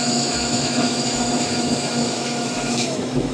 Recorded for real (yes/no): no